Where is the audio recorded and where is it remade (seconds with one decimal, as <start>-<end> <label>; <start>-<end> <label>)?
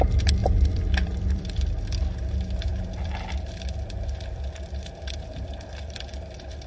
0.0-0.4 recorded; 0.4-1.5 remade; 1.5-2.7 recorded; 2.7-6.7 remade